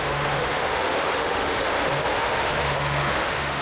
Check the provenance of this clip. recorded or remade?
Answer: remade